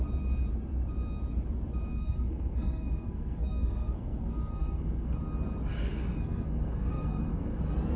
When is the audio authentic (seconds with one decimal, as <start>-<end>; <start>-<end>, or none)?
0.0-1.9; 5.1-5.8; 7.6-8.0